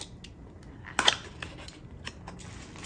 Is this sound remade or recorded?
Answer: recorded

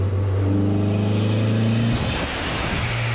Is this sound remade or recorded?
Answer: recorded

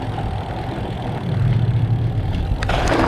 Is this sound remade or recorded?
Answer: remade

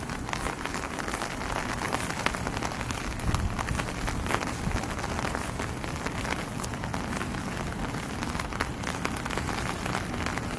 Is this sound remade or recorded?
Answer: recorded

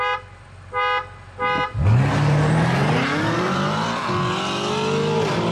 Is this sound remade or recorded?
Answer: recorded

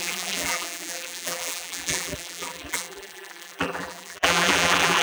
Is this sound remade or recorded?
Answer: remade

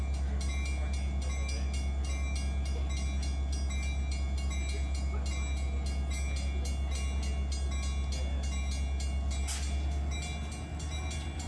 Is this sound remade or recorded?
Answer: recorded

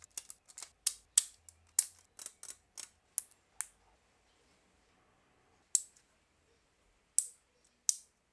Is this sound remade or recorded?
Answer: recorded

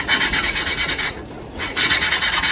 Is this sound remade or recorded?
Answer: remade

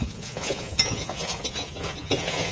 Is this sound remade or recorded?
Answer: remade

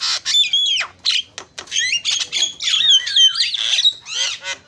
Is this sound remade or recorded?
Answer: recorded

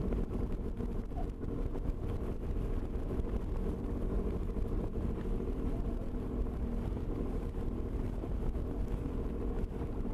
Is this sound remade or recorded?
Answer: recorded